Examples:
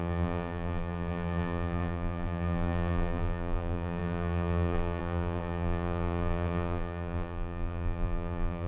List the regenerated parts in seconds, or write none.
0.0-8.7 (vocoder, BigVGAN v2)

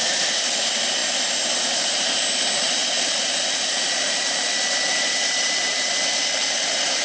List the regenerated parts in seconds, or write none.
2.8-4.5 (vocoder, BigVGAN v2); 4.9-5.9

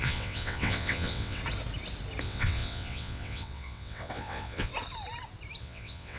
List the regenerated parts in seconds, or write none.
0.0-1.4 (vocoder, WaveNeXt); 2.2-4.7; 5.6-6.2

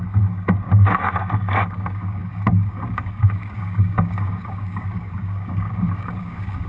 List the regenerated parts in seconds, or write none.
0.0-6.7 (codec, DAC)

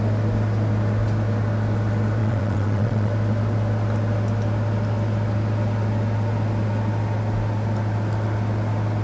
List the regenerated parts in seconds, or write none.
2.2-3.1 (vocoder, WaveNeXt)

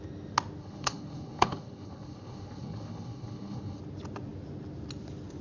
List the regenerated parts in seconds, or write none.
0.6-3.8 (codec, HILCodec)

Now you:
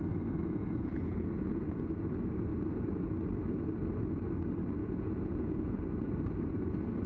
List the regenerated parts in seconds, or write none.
0.4-2.0 (vocoder, Vocos); 4.8-5.8